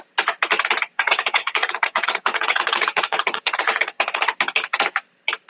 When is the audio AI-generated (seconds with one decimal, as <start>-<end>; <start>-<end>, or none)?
0.9-4.2